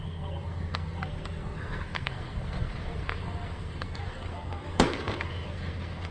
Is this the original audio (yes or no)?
no